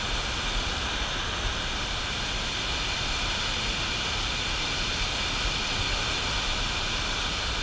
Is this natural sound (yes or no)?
yes